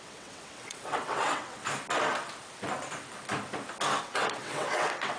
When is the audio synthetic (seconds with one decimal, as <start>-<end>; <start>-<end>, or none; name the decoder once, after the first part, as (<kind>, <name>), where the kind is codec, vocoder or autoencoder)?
0.0-1.6 (vocoder, WaveNeXt); 4.0-5.2